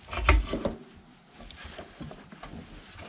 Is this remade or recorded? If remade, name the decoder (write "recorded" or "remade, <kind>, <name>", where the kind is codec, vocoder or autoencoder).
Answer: recorded